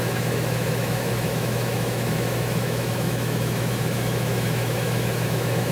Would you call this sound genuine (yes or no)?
no